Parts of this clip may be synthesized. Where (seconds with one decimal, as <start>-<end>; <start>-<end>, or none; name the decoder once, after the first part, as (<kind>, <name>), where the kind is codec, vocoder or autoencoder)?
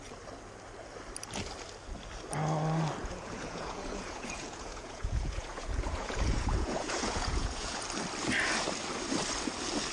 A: 3.0-7.8 (vocoder, Vocos)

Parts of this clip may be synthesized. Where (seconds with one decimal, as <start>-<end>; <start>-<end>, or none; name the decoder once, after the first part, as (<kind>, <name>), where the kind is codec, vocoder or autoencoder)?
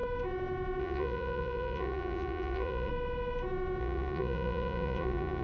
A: 0.8-2.9 (vocoder, Vocos); 3.8-5.4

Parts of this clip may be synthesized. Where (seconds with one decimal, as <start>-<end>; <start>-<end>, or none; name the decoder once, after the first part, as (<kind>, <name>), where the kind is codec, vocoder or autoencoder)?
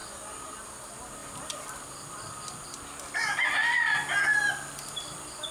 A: none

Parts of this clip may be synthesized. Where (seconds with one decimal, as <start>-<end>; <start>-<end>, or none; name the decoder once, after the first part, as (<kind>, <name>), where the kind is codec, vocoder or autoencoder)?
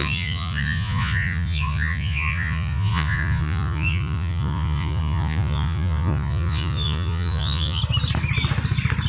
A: 0.0-7.8 (vocoder, Vocos)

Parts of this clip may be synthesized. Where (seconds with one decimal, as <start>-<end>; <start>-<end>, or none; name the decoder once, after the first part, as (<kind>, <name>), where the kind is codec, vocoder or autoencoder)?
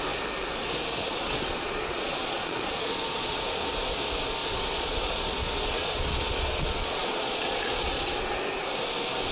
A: 1.0-3.4 (vocoder, Vocos); 4.4-8.2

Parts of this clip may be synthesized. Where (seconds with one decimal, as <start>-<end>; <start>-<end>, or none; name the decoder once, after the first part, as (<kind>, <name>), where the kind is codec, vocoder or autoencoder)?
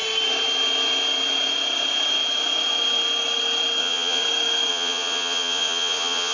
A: 3.8-4.2 (vocoder, Vocos); 4.7-6.3